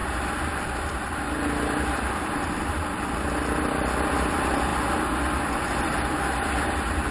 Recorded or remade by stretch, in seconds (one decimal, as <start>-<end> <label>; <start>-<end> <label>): 0.0-7.1 recorded